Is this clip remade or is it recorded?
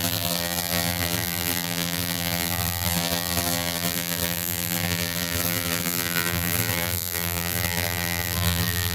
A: remade